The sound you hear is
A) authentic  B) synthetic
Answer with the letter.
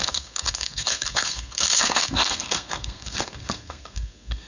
B